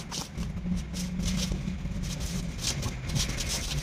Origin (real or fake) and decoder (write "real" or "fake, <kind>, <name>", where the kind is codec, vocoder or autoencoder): real